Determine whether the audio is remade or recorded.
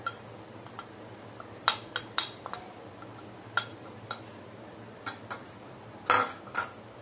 recorded